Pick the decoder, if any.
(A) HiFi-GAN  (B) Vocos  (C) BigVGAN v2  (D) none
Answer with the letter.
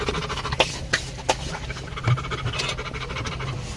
D